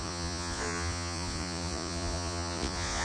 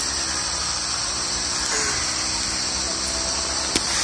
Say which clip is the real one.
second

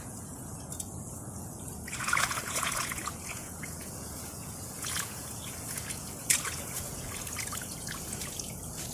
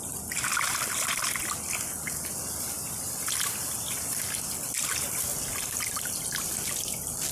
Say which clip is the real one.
second